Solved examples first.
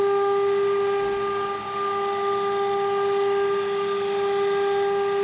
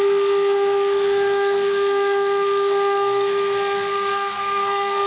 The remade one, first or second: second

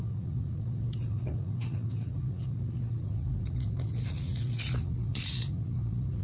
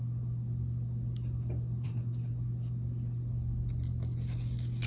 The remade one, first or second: first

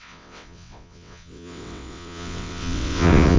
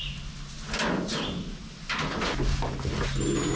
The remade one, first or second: first